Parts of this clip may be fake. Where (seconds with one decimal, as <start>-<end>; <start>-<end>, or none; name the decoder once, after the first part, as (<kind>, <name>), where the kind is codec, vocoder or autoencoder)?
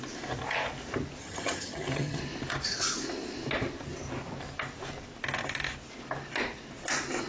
1.2-2.2 (vocoder, HiFi-GAN)